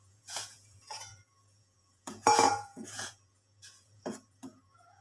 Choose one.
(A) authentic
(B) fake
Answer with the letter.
B